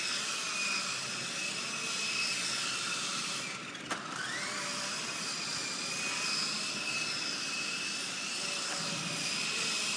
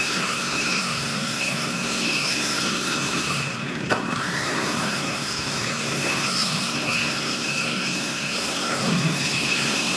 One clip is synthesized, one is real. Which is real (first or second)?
first